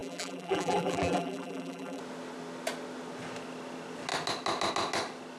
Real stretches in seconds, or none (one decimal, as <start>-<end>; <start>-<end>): 2.0-5.4